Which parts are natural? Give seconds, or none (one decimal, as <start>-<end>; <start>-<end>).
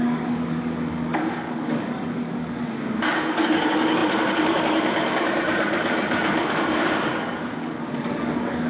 none